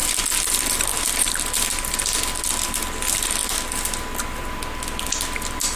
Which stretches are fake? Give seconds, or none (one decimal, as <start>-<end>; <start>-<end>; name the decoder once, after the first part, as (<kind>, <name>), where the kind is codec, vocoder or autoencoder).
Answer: none